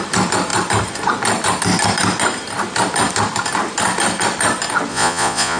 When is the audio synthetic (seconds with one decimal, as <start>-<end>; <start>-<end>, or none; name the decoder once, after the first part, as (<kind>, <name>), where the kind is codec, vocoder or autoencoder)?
4.9-5.6 (vocoder, Vocos)